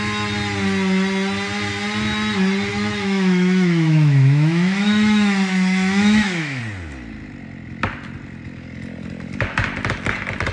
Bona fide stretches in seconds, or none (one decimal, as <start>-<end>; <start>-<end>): 0.0-2.7; 6.6-10.5

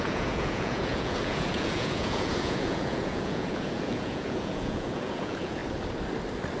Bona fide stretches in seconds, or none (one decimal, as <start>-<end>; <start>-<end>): 5.6-6.6

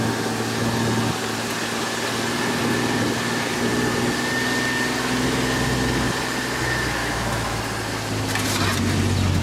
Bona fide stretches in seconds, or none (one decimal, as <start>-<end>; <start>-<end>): 0.0-7.0; 7.6-9.4

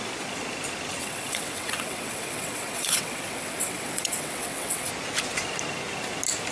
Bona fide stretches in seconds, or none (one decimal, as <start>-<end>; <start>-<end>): 0.0-1.0; 4.9-6.5